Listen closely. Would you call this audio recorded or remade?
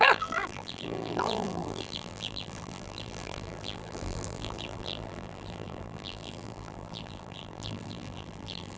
remade